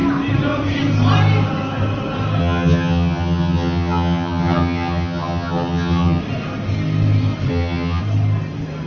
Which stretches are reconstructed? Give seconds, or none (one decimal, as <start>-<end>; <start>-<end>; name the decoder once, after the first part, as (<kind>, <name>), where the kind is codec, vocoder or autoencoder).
2.4-6.2 (vocoder, HiFi-GAN); 7.5-8.0